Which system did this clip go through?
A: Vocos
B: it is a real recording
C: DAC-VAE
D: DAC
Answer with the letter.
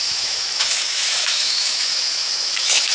C